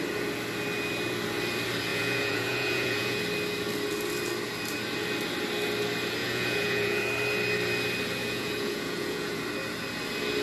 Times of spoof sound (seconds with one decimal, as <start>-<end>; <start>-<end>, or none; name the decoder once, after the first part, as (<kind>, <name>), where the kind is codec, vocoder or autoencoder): 1.9-3.2 (vocoder, Vocos); 6.2-7.0; 8.2-9.4